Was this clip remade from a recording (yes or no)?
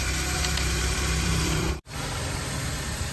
yes